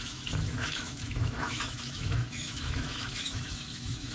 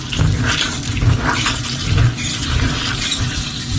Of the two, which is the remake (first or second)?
first